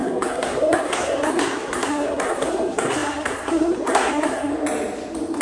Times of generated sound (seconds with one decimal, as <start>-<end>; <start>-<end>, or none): 0.0-4.5